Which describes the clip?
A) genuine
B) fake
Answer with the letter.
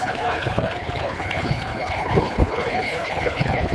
B